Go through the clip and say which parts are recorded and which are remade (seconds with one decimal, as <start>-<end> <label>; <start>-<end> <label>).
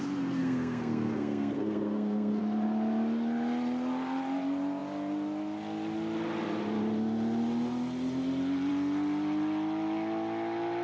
0.0-0.4 recorded; 0.4-2.4 remade; 2.4-10.8 recorded